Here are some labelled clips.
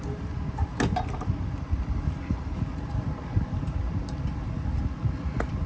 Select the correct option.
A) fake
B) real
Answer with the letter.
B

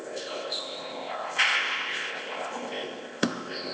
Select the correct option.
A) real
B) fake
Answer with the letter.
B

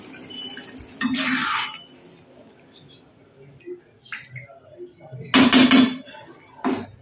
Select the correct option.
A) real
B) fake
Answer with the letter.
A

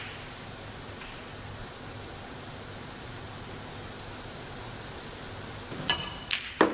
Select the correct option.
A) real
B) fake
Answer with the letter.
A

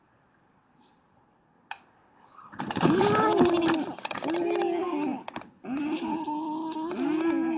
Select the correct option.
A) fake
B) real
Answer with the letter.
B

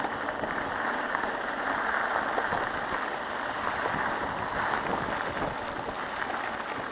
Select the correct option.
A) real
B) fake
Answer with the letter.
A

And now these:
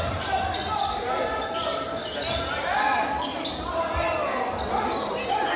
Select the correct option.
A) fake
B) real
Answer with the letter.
B